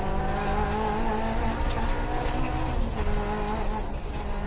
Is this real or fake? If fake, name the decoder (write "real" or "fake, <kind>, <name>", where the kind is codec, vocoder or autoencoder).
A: real